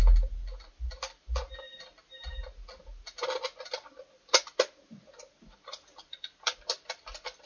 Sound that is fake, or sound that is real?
real